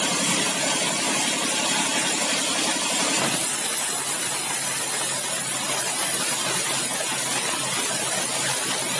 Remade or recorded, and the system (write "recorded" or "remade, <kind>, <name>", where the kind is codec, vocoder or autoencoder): recorded